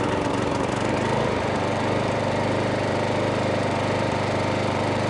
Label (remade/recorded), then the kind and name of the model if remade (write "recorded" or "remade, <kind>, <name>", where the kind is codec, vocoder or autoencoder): remade, vocoder, BigVGAN v2